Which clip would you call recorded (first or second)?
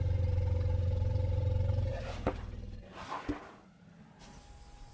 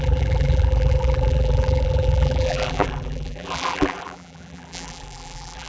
first